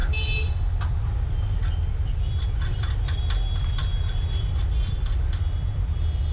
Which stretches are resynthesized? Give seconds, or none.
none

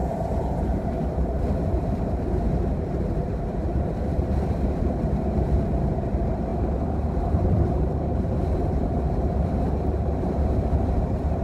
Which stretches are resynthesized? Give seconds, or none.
0.0-11.4

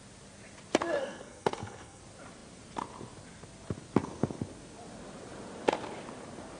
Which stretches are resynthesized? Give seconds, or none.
1.0-2.0

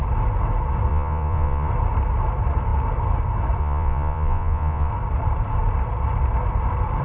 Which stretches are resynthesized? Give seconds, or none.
0.9-1.7; 3.6-4.9

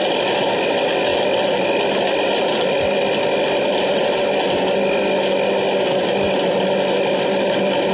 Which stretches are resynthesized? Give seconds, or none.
none

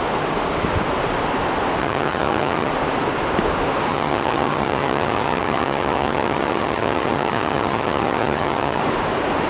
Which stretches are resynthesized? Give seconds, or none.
1.8-2.7; 3.9-8.8